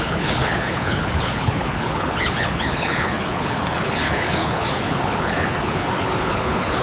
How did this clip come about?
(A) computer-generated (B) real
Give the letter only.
A